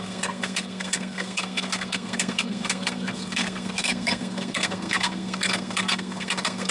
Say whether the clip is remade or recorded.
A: remade